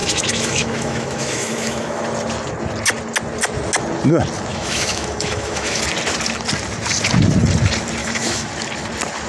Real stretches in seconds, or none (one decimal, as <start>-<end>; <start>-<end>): 2.0-4.5; 5.8-8.0; 8.5-9.3